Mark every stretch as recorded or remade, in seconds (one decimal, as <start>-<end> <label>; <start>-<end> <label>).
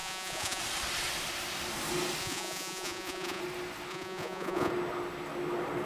0.0-0.6 remade; 0.6-2.2 recorded; 2.2-3.4 remade; 3.4-3.9 recorded; 3.9-4.7 remade; 4.7-5.9 recorded